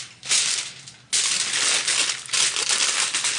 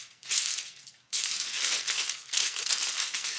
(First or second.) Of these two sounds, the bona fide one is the first